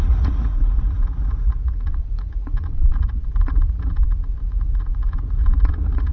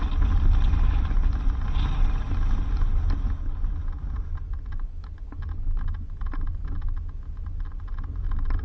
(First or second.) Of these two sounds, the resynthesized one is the first